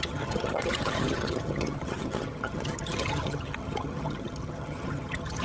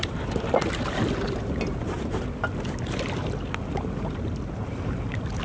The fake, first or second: first